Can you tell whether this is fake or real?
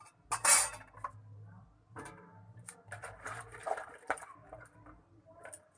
real